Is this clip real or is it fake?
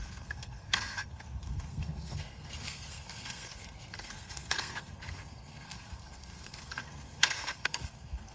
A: fake